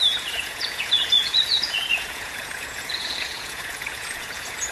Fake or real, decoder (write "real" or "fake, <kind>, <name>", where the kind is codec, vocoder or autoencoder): fake, vocoder, Vocos